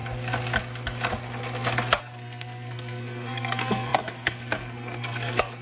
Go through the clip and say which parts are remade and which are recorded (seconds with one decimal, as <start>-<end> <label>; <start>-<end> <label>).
0.0-2.0 recorded; 2.0-5.6 remade